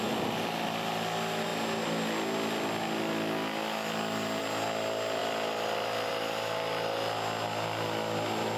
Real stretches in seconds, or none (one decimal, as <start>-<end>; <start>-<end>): 0.0-5.2; 6.1-8.6